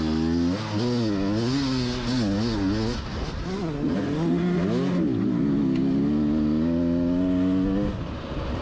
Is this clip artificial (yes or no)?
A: no